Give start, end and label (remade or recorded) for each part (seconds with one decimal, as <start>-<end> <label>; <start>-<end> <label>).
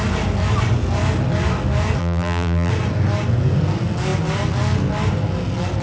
0.0-2.0 recorded; 2.0-2.7 remade; 2.7-5.8 recorded